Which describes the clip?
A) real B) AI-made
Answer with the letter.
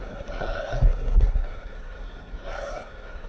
B